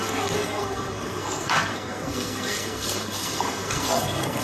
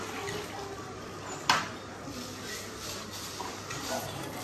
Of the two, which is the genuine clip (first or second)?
second